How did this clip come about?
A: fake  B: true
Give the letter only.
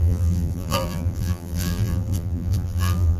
A